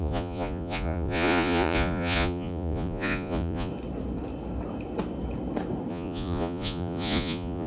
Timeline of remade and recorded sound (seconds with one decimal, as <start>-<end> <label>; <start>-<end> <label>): 0.0-3.7 remade; 3.7-5.9 recorded; 5.9-7.7 remade